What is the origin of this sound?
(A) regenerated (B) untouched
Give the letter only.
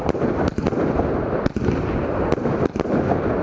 A